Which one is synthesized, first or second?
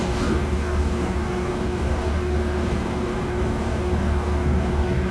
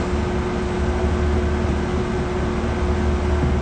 first